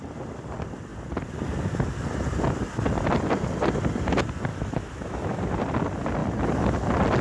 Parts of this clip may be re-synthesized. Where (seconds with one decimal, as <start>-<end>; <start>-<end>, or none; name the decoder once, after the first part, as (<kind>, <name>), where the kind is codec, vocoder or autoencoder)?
4.5-5.4 (autoencoder, DAC-VAE)